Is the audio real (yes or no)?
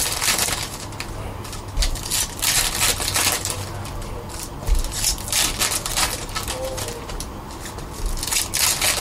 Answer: yes